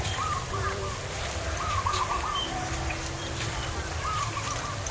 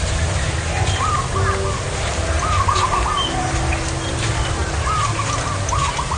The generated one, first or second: first